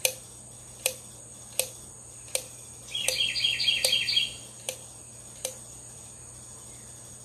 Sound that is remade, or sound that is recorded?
recorded